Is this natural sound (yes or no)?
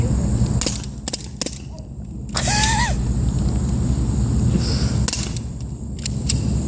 yes